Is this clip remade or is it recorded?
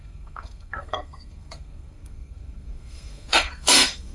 remade